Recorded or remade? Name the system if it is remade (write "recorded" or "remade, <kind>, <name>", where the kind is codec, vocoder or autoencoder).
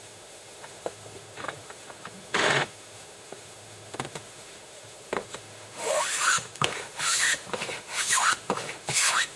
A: remade, autoencoder, DAC-VAE